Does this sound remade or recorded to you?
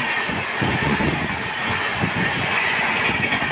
remade